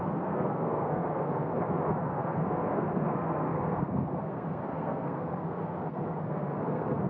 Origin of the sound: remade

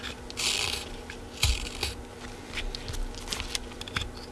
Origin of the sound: recorded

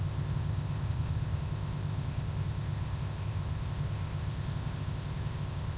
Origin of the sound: remade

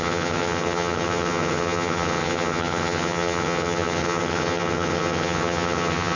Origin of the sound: remade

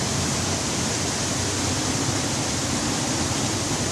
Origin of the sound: recorded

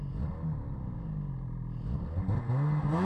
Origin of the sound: recorded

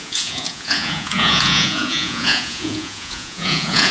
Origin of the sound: remade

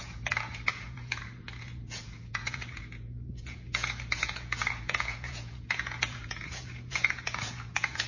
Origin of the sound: remade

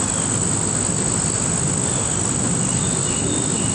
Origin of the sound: recorded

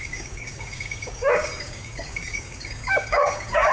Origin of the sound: remade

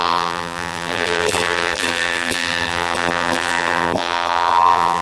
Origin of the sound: remade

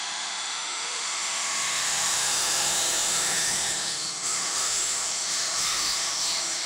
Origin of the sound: remade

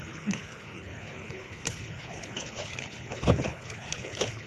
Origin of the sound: remade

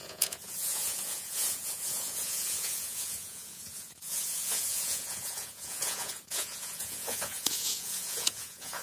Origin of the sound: remade